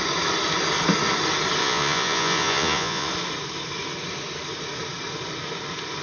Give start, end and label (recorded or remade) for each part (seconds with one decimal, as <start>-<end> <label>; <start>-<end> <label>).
0.0-1.6 recorded; 1.6-3.1 remade; 3.1-6.0 recorded